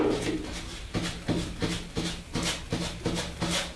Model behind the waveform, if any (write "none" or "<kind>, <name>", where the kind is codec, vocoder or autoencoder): none